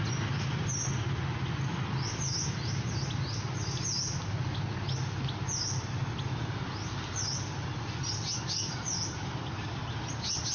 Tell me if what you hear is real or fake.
real